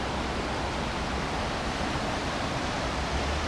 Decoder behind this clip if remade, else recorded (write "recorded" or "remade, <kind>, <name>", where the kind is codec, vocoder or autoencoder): recorded